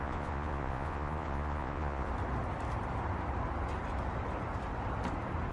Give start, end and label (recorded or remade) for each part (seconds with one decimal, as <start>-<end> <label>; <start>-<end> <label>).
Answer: 0.0-2.1 remade; 2.1-5.5 recorded